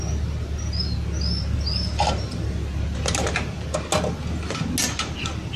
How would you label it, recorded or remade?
recorded